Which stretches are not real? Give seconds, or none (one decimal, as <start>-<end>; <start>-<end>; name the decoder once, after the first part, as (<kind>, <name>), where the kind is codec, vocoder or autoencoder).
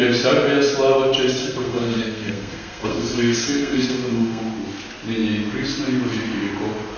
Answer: 1.4-4.4 (codec, SNAC)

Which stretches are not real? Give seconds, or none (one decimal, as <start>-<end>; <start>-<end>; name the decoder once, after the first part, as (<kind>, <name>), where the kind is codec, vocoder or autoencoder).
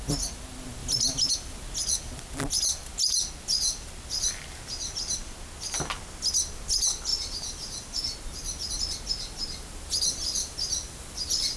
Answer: none